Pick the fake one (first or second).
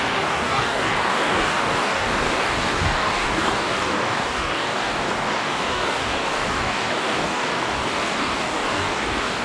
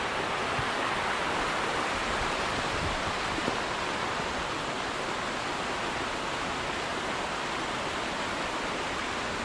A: first